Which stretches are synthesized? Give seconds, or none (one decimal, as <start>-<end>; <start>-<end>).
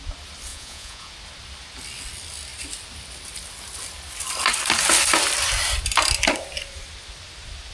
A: 0.5-1.1